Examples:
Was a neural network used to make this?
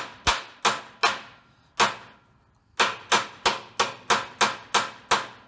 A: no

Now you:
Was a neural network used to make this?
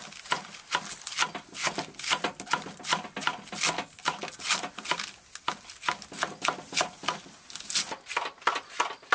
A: no